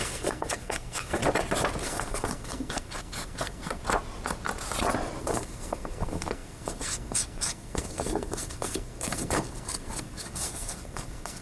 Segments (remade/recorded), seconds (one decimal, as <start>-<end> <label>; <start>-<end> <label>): 0.0-1.2 remade; 1.2-1.8 recorded; 1.8-3.8 remade; 3.8-5.2 recorded; 5.2-11.4 remade